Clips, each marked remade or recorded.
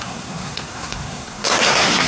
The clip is remade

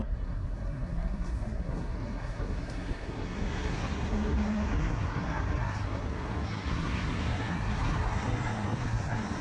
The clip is remade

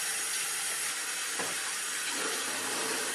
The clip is recorded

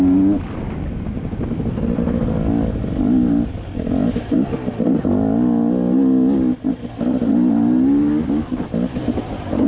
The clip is recorded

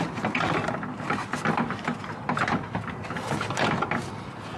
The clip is recorded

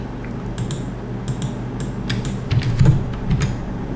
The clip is recorded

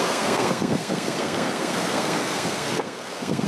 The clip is remade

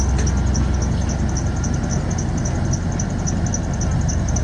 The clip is recorded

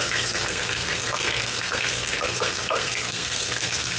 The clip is remade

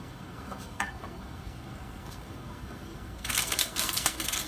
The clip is remade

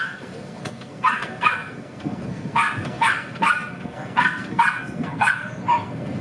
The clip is remade